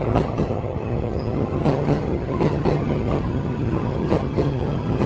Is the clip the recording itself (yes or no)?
no